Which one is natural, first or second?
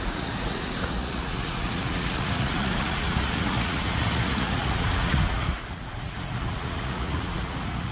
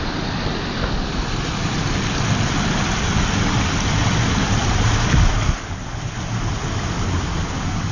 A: second